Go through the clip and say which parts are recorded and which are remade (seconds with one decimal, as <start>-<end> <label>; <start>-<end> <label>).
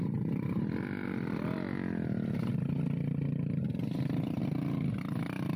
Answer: 0.0-5.6 recorded